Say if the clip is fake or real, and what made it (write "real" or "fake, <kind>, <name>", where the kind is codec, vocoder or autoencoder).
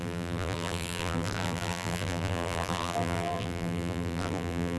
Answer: fake, vocoder, BigVGAN v2